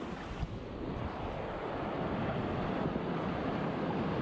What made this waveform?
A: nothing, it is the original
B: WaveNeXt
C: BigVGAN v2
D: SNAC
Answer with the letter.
A